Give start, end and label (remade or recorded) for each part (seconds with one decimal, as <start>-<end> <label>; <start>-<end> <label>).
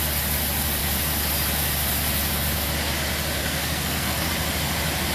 0.0-3.4 recorded; 3.4-4.3 remade; 4.3-5.1 recorded